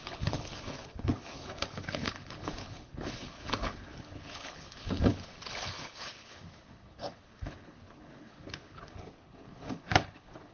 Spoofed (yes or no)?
yes